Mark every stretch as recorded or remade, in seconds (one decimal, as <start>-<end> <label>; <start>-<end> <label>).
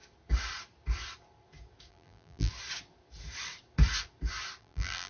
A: 0.0-1.9 recorded; 1.9-2.5 remade; 2.5-4.6 recorded; 4.6-5.1 remade